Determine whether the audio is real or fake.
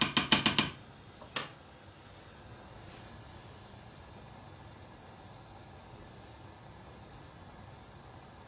real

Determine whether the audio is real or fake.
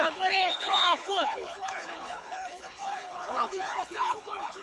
fake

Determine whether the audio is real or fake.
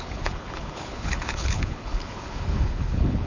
fake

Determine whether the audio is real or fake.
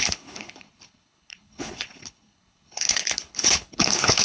fake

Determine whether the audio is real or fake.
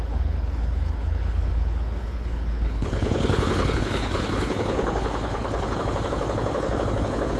fake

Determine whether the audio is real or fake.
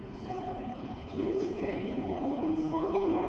fake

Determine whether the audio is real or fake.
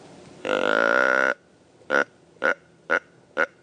real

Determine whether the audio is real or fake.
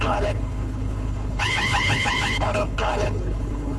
fake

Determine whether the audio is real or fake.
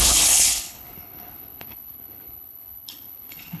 fake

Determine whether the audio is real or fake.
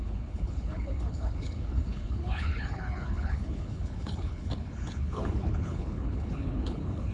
fake